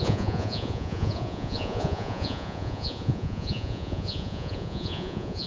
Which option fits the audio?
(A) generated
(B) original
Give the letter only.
A